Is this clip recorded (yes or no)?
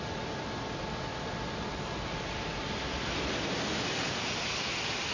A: yes